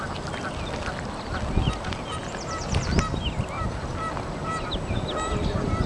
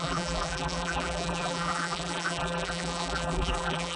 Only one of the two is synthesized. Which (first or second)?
second